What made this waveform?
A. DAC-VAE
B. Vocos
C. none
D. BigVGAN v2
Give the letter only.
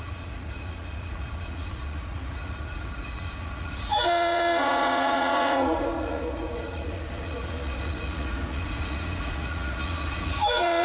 B